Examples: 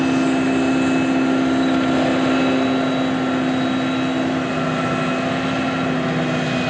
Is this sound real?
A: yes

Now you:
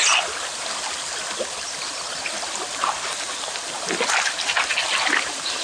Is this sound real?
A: yes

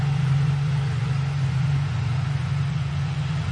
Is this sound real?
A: no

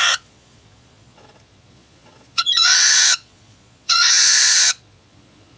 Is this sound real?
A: no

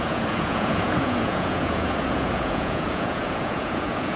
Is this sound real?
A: no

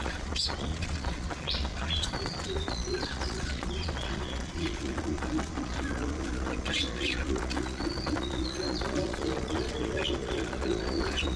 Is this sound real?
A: no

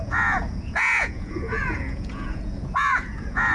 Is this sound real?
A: no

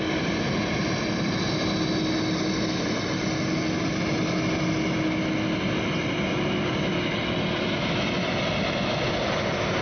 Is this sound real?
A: yes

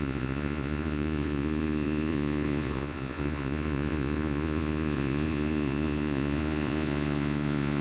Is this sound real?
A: no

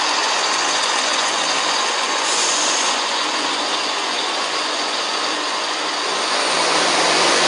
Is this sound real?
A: no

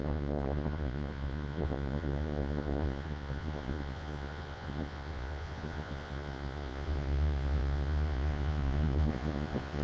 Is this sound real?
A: no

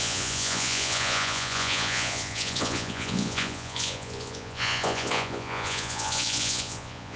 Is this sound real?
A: no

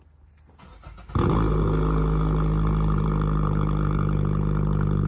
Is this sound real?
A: yes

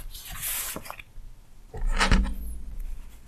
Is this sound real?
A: yes